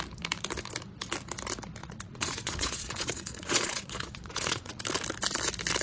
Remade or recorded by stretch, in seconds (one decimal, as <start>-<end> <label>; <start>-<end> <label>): 0.0-1.8 recorded; 1.8-4.8 remade; 4.8-5.8 recorded